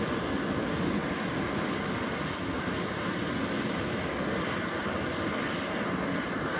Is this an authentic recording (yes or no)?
yes